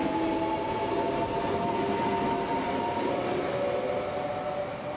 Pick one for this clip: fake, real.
real